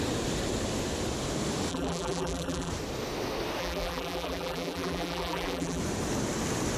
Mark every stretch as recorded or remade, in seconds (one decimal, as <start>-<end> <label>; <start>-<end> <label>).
0.0-1.7 recorded; 1.7-2.7 remade; 2.7-3.6 recorded; 3.6-5.8 remade; 5.8-6.8 recorded